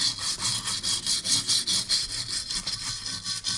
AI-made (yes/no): no